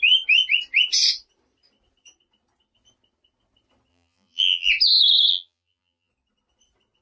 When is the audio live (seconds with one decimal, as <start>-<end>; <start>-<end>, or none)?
0.0-3.9; 4.7-5.3; 6.1-7.0